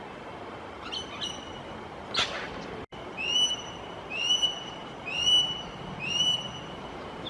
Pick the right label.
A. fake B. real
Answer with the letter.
B